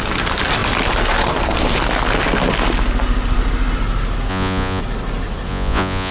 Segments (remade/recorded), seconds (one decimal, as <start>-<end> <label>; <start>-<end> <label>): 0.0-4.3 recorded; 4.3-4.8 remade; 4.8-5.5 recorded; 5.5-6.1 remade